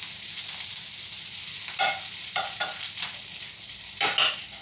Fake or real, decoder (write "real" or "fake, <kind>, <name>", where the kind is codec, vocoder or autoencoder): real